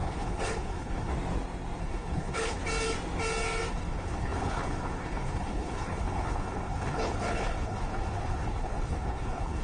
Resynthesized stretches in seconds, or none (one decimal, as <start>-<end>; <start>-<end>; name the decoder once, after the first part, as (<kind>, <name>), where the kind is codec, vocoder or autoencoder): 0.0-1.1 (codec, HILCodec); 1.8-2.6; 3.7-9.6